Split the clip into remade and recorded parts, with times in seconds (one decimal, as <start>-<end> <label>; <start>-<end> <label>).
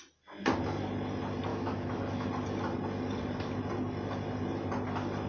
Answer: 0.0-1.5 recorded; 1.5-2.3 remade; 2.3-5.3 recorded